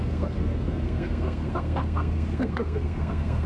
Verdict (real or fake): fake